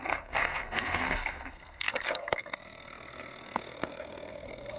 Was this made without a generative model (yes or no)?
no